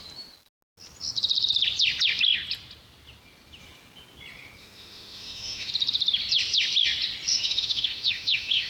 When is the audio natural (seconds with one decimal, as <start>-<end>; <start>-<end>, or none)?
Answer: 0.0-4.6; 5.7-7.3